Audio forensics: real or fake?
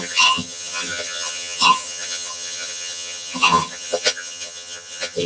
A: fake